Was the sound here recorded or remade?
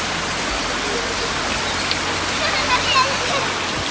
recorded